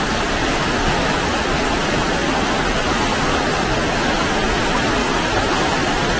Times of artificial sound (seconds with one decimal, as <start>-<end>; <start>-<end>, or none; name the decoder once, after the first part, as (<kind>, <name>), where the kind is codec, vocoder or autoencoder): 0.0-0.4 (vocoder, BigVGAN v2); 1.0-2.2; 3.8-5.0; 5.6-6.2